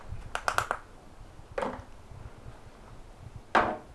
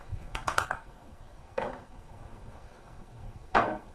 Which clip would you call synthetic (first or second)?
second